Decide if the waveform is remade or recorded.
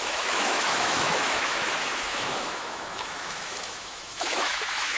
remade